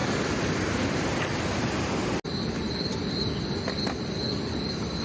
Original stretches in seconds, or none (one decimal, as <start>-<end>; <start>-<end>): 0.0-5.0